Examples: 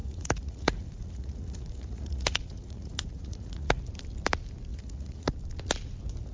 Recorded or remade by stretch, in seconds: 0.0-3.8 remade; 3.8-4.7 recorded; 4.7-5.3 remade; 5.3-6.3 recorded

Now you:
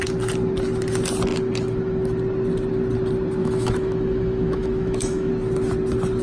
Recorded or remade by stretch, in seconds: 0.0-3.4 recorded; 3.4-5.3 remade; 5.3-6.2 recorded

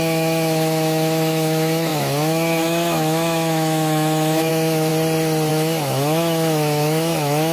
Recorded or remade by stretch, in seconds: 0.0-4.9 remade; 4.9-5.5 recorded; 5.5-7.5 remade